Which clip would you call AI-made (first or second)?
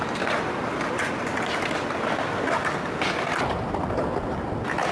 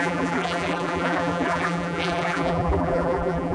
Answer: second